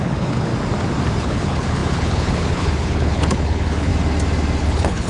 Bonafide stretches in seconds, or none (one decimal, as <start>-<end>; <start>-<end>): 0.5-1.2; 3.9-4.6